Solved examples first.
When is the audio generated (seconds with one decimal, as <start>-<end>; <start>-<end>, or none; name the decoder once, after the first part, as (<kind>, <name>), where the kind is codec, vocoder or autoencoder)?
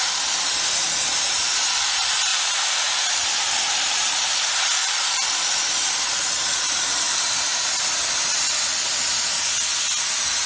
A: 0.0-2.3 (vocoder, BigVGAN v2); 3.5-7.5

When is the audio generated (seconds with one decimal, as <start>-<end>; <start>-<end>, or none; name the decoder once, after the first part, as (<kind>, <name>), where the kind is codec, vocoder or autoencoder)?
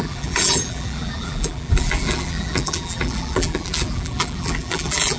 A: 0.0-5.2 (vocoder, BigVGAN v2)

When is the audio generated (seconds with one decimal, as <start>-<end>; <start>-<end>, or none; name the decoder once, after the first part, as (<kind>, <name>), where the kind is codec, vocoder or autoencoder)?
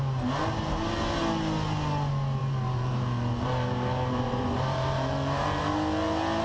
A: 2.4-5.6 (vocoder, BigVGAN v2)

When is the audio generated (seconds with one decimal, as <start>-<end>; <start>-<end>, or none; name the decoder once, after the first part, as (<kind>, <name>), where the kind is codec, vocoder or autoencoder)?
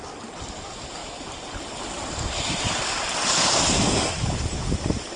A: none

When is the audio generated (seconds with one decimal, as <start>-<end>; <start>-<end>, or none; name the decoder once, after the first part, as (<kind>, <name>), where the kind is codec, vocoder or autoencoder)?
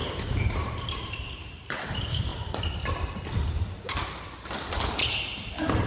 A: 0.0-2.3 (vocoder, BigVGAN v2)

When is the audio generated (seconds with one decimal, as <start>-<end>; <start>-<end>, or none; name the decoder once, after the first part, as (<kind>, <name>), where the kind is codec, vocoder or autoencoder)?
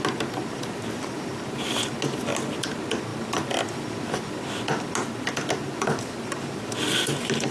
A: none